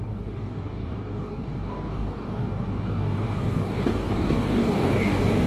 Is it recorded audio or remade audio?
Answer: remade